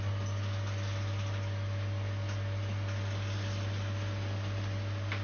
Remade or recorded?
recorded